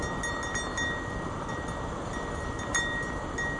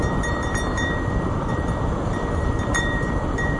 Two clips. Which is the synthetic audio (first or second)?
second